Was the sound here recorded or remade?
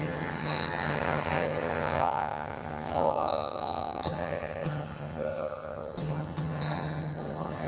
remade